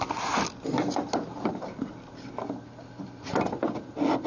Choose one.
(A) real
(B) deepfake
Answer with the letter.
A